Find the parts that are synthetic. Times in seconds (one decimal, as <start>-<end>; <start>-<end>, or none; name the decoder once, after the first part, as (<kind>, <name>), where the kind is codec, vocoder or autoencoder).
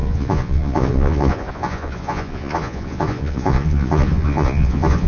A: 0.0-5.1 (vocoder, Vocos)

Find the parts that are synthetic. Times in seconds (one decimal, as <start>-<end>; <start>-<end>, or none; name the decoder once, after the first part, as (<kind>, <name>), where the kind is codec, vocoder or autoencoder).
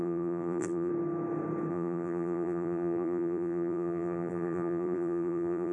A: 0.0-0.9 (vocoder, BigVGAN v2); 1.7-5.7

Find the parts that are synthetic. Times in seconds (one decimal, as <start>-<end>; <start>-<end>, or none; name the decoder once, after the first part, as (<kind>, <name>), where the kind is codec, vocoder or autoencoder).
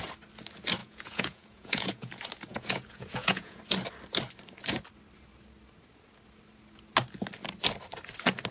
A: 0.8-2.1 (vocoder, Vocos); 2.5-3.6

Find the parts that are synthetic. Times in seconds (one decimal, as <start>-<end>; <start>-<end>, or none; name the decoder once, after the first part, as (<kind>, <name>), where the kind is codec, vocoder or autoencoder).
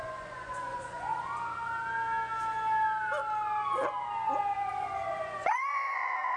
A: 0.0-1.1 (vocoder, Vocos); 4.7-6.4